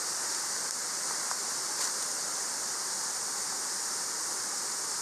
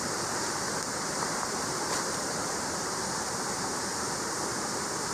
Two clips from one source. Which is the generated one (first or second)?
second